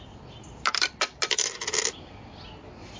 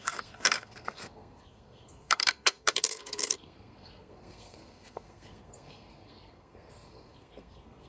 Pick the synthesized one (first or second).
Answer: second